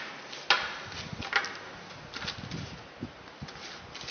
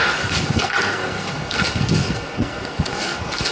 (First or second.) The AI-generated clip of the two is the second